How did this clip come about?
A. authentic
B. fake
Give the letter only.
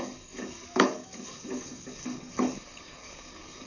B